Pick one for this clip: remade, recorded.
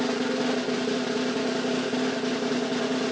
recorded